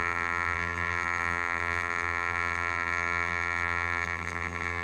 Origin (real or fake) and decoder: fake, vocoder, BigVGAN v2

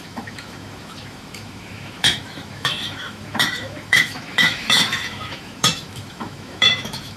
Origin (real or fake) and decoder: fake, autoencoder, DAC-VAE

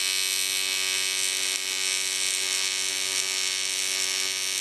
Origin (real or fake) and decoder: real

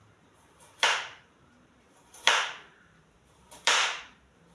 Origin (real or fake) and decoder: fake, vocoder, BigVGAN v2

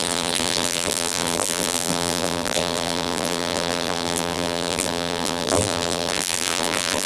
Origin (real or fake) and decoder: fake, vocoder, BigVGAN v2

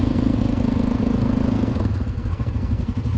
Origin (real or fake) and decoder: fake, codec, SNAC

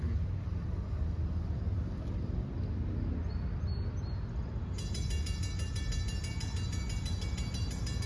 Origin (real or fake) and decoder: real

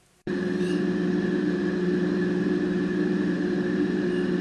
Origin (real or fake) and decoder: real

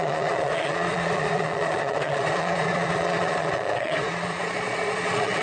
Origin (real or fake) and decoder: fake, vocoder, Vocos